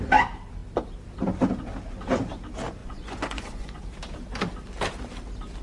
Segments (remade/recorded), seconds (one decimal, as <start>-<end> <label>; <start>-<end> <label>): 0.0-2.8 recorded; 2.8-3.8 remade; 3.8-5.6 recorded